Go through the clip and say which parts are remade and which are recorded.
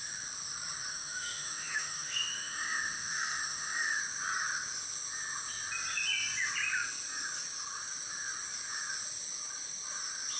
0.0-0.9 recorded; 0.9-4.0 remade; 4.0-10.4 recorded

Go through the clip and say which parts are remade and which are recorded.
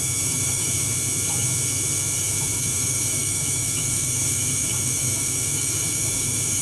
0.0-0.9 remade; 0.9-2.2 recorded; 2.2-6.6 remade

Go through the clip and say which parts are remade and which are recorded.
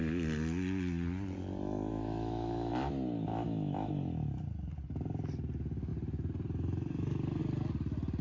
0.0-1.9 recorded; 1.9-2.7 remade; 2.7-3.3 recorded; 3.3-3.9 remade; 3.9-8.2 recorded